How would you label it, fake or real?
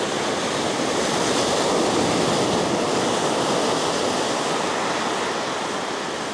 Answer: real